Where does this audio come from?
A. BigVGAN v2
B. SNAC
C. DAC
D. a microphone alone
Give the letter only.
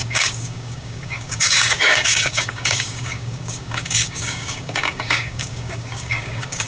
C